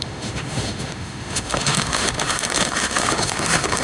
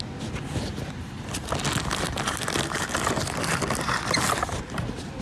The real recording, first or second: second